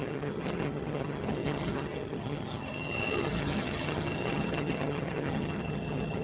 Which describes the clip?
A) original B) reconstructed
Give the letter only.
B